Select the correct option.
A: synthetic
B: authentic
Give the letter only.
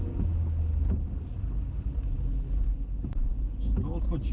B